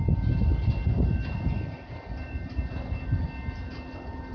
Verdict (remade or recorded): recorded